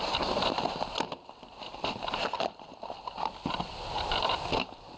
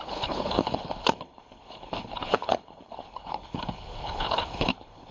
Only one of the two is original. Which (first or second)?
first